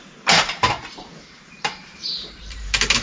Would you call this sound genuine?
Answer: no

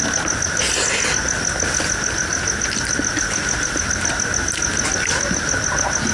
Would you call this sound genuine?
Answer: yes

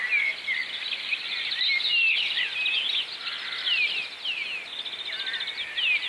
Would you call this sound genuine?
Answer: yes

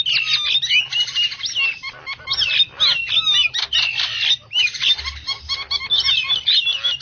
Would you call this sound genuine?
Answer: yes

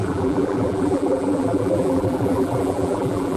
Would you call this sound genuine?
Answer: no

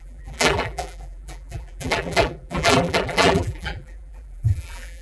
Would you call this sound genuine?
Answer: no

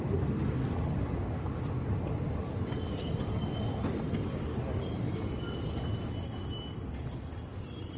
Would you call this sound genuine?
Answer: yes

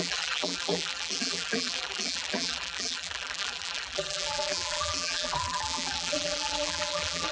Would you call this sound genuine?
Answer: no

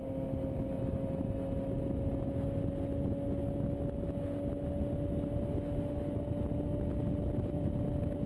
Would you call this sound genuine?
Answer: yes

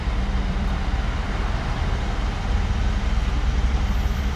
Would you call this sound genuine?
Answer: no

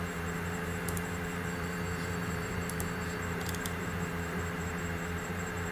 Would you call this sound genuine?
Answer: no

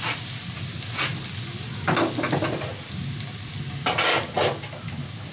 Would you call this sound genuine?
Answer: yes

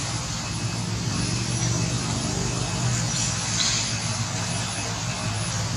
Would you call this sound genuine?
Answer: yes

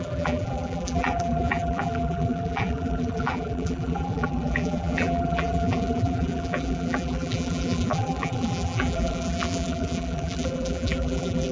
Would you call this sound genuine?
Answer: no